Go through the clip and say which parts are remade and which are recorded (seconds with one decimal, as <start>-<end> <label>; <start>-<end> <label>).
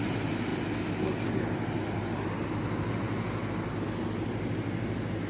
0.0-5.3 recorded